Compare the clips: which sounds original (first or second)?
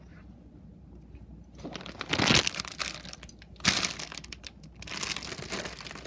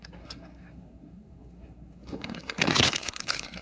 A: first